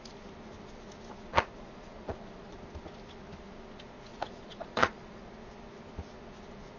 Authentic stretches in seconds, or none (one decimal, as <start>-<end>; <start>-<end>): 0.0-1.3; 2.6-4.1; 5.3-6.8